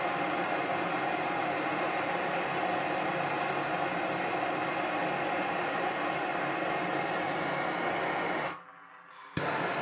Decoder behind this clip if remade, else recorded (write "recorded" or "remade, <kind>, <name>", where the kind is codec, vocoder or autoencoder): recorded